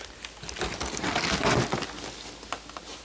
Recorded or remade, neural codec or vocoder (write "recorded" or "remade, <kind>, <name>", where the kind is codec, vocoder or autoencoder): recorded